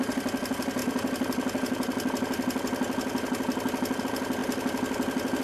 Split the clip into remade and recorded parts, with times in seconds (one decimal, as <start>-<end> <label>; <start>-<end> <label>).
0.0-5.4 recorded